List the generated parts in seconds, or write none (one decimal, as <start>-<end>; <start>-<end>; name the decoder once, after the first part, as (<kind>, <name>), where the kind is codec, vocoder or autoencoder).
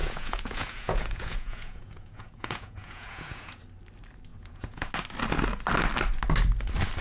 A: 0.0-3.6 (vocoder, Vocos); 4.3-4.9